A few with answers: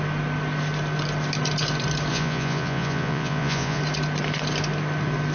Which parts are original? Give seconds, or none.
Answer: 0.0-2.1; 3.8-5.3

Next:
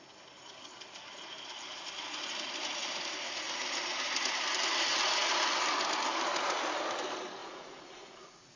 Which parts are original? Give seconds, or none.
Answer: 0.0-7.4